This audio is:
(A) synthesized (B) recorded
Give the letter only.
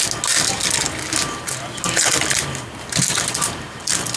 B